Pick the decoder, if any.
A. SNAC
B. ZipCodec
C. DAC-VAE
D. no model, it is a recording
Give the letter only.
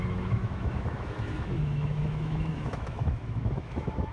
C